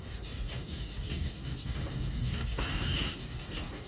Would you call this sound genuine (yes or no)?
no